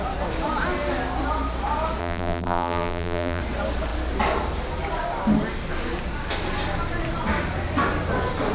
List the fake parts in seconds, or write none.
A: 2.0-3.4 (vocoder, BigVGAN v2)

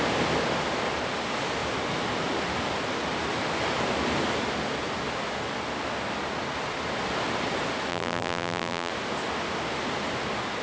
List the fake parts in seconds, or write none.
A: 7.9-8.9 (vocoder, BigVGAN v2)

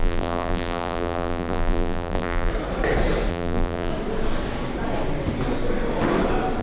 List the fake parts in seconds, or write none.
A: 0.0-2.5 (vocoder, BigVGAN v2); 3.3-3.9

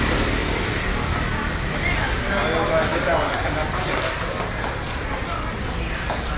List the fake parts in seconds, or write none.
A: 0.4-2.3 (vocoder, BigVGAN v2)

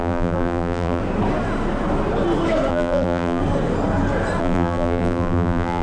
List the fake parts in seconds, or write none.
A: 0.0-1.0 (vocoder, BigVGAN v2); 2.7-3.4; 4.4-5.8

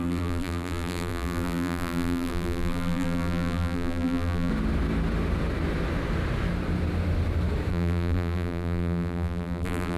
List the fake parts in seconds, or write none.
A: 0.0-4.5 (vocoder, BigVGAN v2); 7.7-10.0

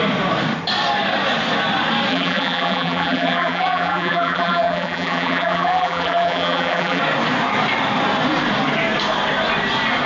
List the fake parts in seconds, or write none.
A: 2.1-7.0 (vocoder, BigVGAN v2)